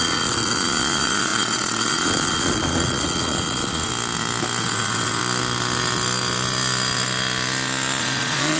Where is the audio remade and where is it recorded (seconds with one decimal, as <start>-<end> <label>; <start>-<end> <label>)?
0.0-3.9 remade; 3.9-4.6 recorded; 4.6-5.2 remade; 5.2-8.0 recorded; 8.0-8.6 remade